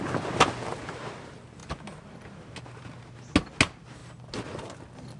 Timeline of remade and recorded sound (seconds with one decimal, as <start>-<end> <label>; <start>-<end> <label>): 0.0-5.2 recorded